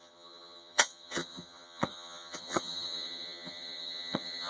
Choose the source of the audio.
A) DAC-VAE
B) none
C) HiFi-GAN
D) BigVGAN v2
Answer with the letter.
C